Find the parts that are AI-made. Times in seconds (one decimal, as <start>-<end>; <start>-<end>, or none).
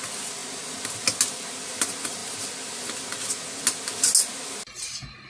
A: none